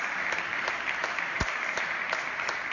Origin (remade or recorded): recorded